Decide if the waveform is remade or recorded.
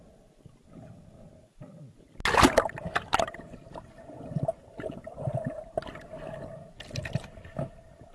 recorded